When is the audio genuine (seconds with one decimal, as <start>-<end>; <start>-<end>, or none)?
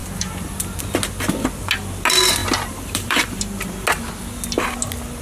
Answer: 0.8-2.4; 3.4-5.2